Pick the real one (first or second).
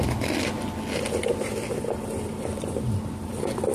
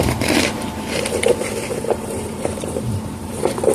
first